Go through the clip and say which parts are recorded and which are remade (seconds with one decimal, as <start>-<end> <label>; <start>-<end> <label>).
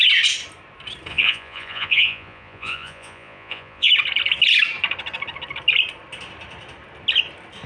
0.0-1.1 recorded; 1.1-3.9 remade; 3.9-7.7 recorded